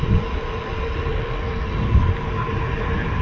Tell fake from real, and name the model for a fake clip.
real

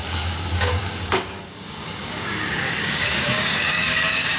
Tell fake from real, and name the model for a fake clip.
fake, codec, DAC